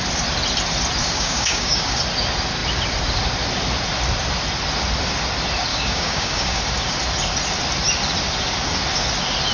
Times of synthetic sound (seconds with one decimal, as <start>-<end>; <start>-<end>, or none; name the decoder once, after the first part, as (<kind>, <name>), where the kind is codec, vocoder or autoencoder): 1.0-2.0 (codec, DAC); 5.7-6.6